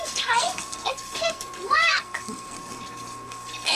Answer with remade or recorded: remade